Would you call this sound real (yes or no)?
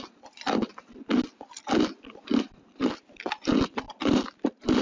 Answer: yes